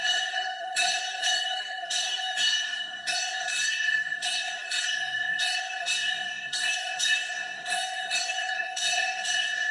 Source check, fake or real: fake